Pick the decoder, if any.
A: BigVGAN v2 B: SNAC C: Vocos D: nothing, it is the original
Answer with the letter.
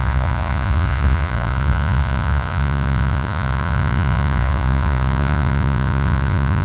C